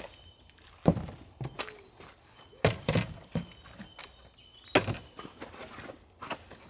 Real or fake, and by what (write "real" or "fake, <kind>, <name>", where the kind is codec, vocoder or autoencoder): real